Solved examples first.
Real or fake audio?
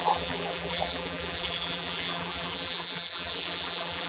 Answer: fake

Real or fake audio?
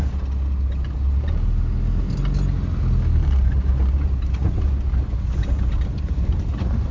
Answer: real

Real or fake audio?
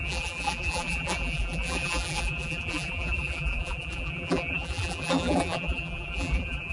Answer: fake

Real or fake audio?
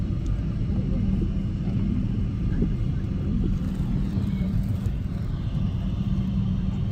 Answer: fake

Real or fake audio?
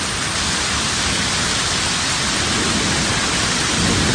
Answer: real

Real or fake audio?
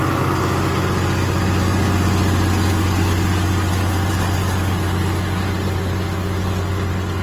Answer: real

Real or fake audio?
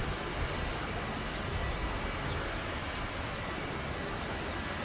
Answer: real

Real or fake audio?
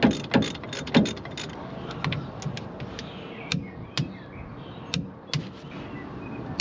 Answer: real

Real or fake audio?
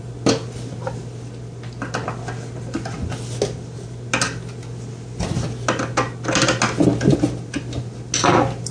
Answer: real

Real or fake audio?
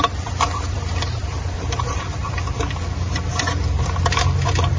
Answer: fake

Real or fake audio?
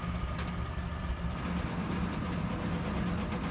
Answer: real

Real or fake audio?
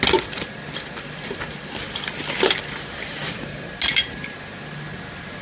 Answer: real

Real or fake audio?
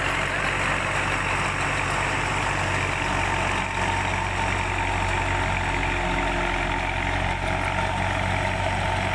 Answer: real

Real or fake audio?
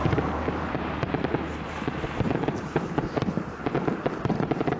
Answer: fake